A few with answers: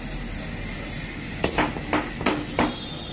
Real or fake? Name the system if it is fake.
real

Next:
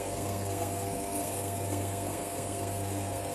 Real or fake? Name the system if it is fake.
fake, codec, SNAC